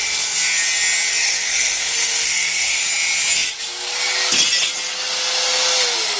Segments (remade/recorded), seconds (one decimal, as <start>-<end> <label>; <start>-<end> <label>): 0.0-1.2 recorded; 1.2-2.8 remade; 2.8-6.2 recorded